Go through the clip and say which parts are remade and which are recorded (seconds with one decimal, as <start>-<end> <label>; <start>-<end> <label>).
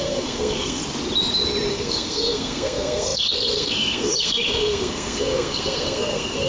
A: 0.0-0.8 remade; 0.8-1.7 recorded; 1.7-6.5 remade